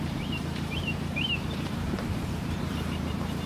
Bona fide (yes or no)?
no